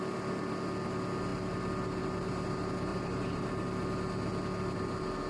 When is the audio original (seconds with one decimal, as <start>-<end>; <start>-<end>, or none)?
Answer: 0.0-2.9; 3.5-5.3